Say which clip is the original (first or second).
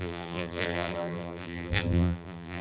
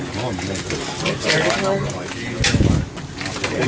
second